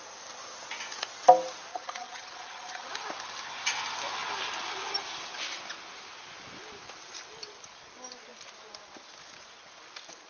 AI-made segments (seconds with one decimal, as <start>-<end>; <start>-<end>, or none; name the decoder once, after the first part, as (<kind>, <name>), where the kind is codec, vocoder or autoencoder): 1.7-2.9 (vocoder, HiFi-GAN)